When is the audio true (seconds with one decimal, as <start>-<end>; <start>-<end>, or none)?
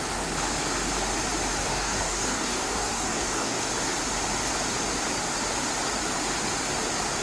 0.0-1.6; 3.6-7.2